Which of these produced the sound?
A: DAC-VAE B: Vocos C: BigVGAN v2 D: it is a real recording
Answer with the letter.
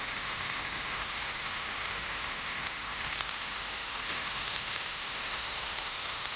A